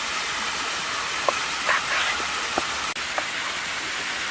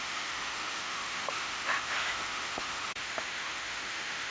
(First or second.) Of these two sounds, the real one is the first